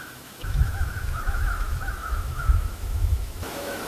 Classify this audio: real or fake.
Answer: fake